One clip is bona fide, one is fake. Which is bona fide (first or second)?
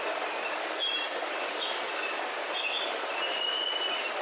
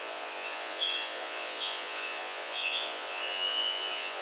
first